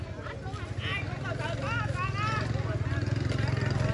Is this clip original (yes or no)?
yes